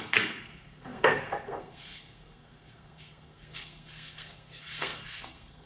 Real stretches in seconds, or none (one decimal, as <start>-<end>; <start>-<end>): none